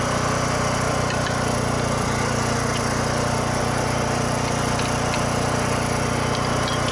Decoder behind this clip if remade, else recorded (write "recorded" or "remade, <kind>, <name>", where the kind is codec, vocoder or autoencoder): recorded